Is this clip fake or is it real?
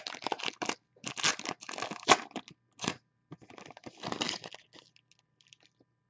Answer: real